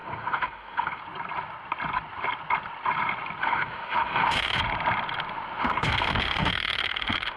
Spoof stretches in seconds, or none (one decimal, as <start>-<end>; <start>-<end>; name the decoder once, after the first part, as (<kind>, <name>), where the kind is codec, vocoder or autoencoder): 0.0-1.0 (autoencoder, DAC-VAE); 3.4-4.6; 5.6-7.4